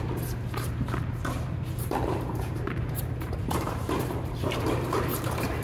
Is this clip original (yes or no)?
no